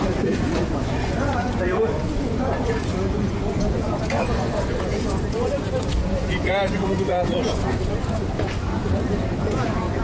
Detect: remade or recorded remade